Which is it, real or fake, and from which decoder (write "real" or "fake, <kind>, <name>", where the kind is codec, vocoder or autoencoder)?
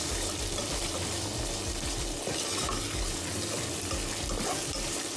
real